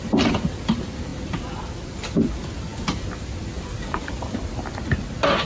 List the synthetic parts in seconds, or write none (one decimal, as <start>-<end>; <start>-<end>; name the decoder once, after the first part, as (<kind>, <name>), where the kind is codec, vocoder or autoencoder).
none